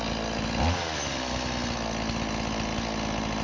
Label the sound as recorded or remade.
recorded